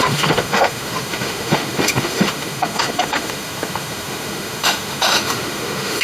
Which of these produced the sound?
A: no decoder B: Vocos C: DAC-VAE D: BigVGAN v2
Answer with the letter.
C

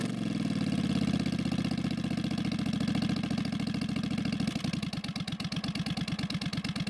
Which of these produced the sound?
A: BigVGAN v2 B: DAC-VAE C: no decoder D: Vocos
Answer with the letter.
C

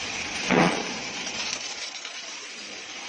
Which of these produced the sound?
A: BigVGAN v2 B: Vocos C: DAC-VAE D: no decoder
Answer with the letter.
B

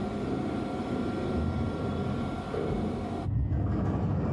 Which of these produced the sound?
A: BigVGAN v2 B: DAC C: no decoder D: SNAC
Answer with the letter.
C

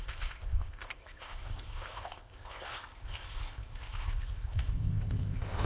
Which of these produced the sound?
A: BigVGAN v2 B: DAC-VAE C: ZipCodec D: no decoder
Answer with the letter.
C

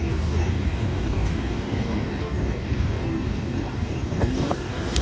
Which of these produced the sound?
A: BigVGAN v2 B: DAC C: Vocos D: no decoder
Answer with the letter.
B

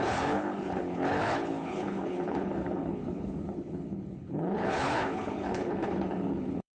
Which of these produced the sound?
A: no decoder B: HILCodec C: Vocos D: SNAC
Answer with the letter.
B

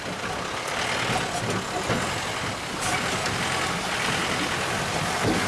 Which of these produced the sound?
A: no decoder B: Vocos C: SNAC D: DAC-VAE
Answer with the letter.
A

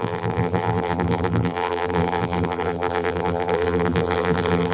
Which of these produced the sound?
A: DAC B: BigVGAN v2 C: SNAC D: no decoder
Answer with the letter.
B